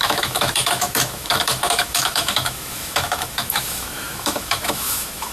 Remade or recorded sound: remade